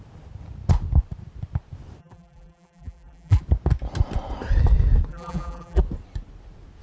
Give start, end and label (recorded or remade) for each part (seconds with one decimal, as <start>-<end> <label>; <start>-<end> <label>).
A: 0.0-2.0 recorded; 2.0-3.4 remade; 3.4-5.1 recorded; 5.1-5.8 remade; 5.8-6.8 recorded